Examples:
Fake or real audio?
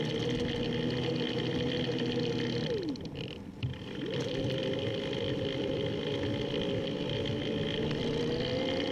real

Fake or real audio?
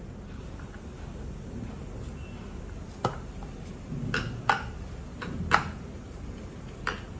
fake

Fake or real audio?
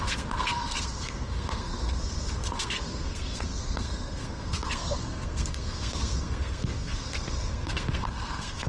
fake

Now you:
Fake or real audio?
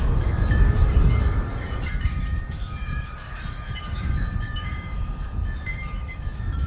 fake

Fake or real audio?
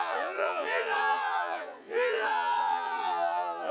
fake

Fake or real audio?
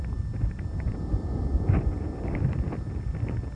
real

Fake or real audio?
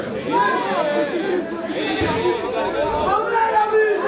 real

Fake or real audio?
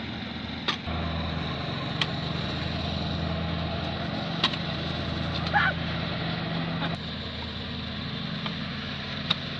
real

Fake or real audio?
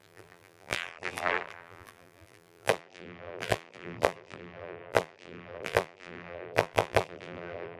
fake